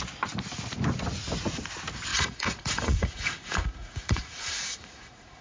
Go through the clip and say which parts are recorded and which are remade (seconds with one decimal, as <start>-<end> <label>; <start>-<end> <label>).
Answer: 0.0-2.1 recorded; 2.1-5.4 remade